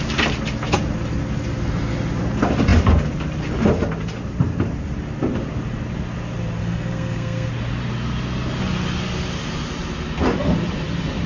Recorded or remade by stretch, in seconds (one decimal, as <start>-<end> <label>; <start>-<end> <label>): 0.0-6.6 recorded; 6.6-7.5 remade; 7.5-11.3 recorded